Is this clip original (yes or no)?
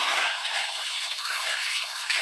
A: no